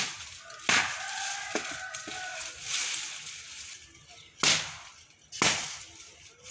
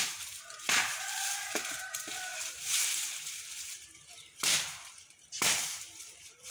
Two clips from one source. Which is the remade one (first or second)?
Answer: second